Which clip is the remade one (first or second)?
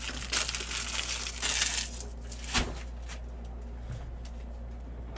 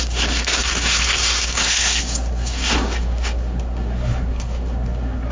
second